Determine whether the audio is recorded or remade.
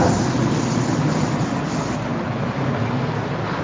recorded